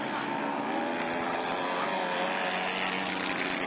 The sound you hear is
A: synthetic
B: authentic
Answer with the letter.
B